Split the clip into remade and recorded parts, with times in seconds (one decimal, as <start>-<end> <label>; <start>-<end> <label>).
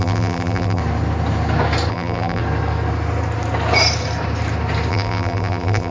0.0-0.8 remade; 0.8-1.9 recorded; 1.9-2.4 remade; 2.4-4.9 recorded; 4.9-5.9 remade